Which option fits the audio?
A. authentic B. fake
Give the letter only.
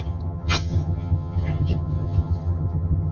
B